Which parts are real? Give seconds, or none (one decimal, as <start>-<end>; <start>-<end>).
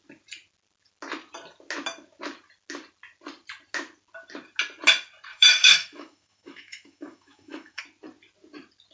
0.0-5.3; 7.8-8.9